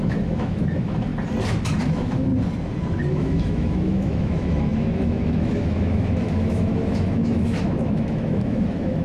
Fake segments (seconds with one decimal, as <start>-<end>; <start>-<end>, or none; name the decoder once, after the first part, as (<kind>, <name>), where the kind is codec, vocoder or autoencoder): 0.0-1.1 (autoencoder, DAC-VAE); 1.8-2.3; 3.1-9.0